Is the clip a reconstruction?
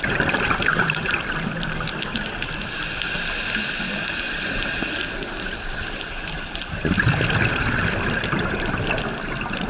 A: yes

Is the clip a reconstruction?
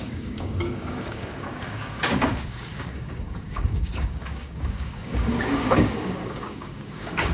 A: yes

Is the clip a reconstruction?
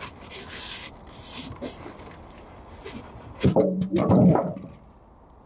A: no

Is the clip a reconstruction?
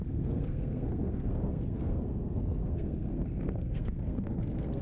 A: yes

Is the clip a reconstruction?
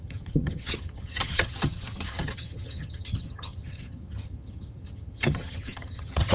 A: yes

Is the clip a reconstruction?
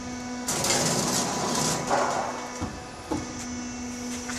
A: no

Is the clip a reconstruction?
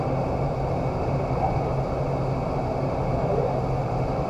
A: no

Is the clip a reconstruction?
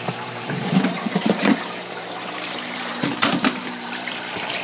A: yes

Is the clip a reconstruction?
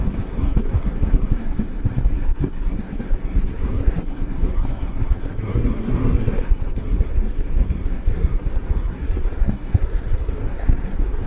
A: yes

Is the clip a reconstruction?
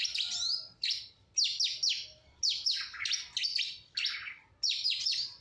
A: no